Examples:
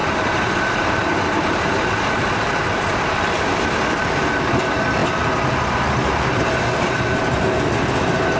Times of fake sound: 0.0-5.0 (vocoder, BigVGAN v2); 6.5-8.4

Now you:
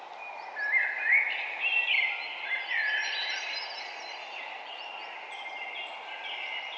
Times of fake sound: none

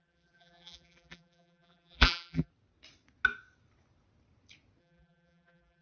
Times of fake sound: 0.0-2.5 (vocoder, BigVGAN v2); 4.8-5.8